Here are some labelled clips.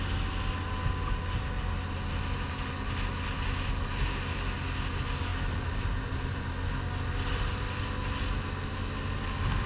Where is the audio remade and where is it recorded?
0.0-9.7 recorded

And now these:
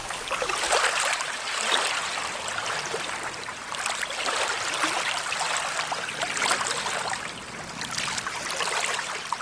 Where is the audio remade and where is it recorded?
0.0-9.4 recorded